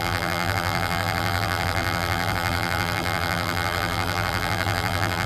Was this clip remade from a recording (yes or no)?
yes